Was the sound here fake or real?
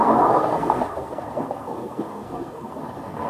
fake